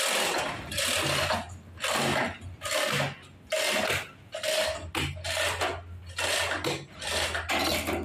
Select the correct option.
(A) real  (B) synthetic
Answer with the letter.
A